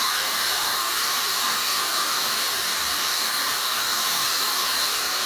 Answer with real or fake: fake